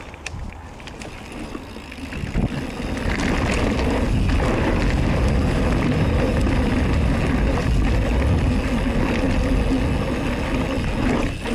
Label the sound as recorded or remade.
recorded